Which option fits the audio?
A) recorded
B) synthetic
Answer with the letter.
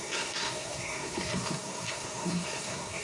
B